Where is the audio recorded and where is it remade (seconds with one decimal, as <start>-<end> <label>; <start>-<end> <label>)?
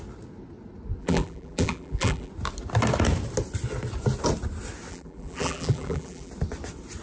0.0-1.0 recorded; 1.0-2.3 remade; 2.3-4.9 recorded; 4.9-6.3 remade; 6.3-7.0 recorded